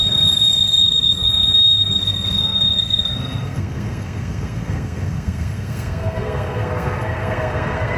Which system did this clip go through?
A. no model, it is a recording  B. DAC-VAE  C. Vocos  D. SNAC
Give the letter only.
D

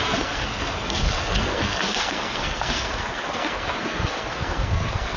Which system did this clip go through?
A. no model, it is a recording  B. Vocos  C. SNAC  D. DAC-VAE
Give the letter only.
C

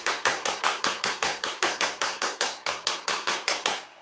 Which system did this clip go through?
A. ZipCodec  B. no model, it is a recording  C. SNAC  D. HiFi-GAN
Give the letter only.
C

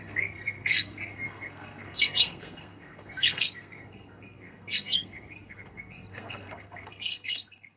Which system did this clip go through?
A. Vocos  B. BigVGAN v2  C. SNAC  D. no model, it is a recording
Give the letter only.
C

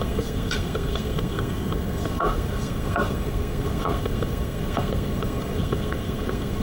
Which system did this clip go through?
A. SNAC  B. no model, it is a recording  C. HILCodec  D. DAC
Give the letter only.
A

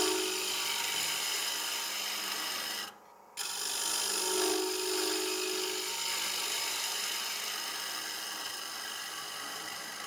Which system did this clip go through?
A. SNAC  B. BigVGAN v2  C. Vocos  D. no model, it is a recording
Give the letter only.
D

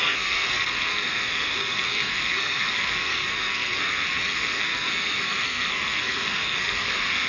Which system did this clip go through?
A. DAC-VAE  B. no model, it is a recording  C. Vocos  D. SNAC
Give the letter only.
D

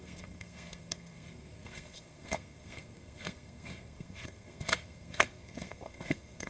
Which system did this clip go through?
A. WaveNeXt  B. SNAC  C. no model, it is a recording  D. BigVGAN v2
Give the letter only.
B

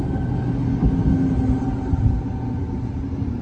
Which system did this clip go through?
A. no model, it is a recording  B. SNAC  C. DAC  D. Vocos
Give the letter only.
A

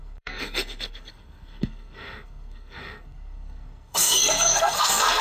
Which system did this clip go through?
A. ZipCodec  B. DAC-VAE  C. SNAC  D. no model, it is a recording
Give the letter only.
C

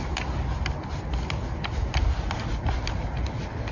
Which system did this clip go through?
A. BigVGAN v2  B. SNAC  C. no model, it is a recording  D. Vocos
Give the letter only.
C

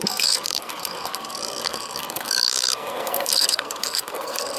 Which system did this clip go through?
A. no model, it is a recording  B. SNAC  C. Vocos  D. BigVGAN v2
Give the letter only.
B